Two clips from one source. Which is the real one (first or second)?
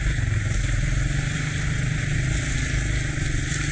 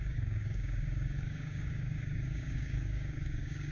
first